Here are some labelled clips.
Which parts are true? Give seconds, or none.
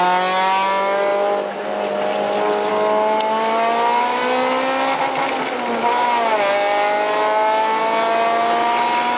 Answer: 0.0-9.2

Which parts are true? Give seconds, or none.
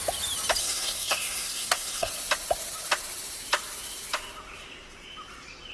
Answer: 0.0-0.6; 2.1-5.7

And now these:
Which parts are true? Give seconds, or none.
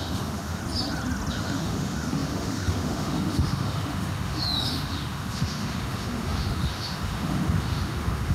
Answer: 0.6-1.3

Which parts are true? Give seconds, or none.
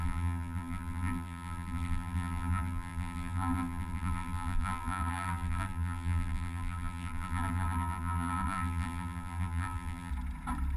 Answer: 10.1-10.8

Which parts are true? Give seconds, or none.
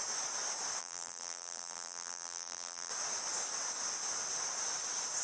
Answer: 0.0-0.8; 2.9-5.2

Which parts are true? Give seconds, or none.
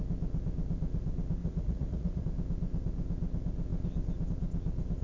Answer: 0.0-1.4; 2.2-5.0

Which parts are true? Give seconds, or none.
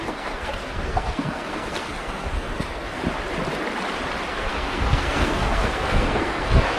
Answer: 3.0-4.3